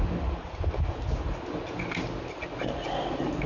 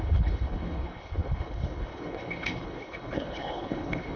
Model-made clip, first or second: second